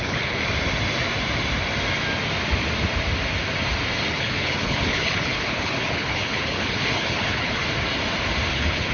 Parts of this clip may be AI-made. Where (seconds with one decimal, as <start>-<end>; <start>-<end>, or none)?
0.0-0.4; 4.1-7.6; 8.5-8.9